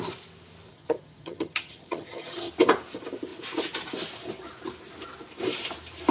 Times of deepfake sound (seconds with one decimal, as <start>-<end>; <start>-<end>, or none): 0.7-2.5